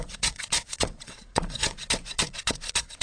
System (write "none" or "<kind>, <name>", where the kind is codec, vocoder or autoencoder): vocoder, WaveNeXt